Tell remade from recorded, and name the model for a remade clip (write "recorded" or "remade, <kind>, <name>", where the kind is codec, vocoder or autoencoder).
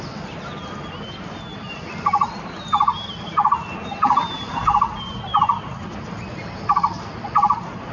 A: recorded